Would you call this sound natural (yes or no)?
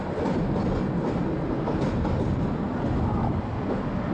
yes